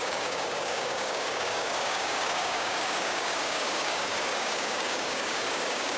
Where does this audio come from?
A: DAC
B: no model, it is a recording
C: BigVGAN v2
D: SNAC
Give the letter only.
A